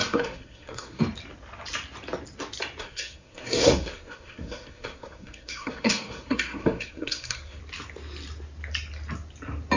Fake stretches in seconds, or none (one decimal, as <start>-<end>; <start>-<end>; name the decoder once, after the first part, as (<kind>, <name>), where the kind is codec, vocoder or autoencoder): 0.0-1.0 (codec, SNAC); 2.8-7.6

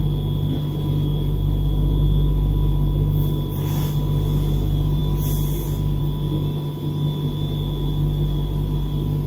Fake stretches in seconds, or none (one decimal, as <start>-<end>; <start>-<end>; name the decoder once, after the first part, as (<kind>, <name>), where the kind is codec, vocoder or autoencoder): none

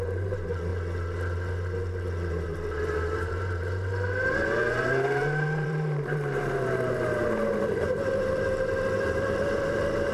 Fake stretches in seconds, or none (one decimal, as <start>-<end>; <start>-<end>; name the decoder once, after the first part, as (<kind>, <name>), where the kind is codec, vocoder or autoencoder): 0.0-0.7 (vocoder, BigVGAN v2); 2.3-10.1